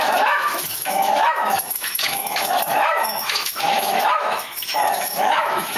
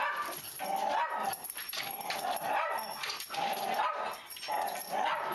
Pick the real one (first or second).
second